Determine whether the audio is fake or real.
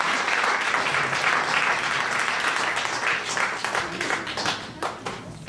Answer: real